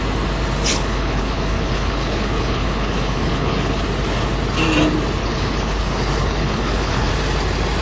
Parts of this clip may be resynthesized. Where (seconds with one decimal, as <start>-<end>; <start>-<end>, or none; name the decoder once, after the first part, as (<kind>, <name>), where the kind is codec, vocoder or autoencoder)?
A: 0.7-3.8 (codec, HILCodec); 5.2-7.1